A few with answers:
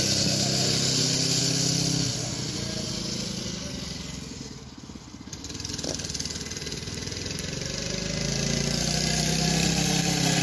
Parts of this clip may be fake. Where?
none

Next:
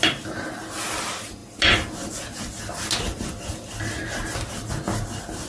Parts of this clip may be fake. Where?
none

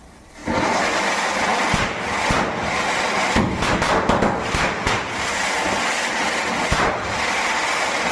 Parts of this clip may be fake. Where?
0.4-1.1 (vocoder, BigVGAN v2)

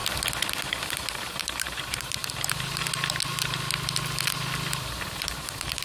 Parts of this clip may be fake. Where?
0.5-2.2 (vocoder, BigVGAN v2); 5.2-5.8

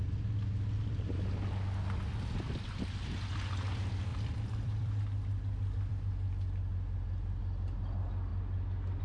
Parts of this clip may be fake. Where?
4.1-5.9 (vocoder, BigVGAN v2)

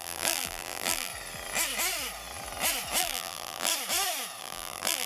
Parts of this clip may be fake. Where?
0.0-1.1 (vocoder, BigVGAN v2); 3.0-3.7; 4.4-5.1

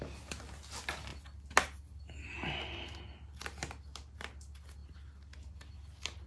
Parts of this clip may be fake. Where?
none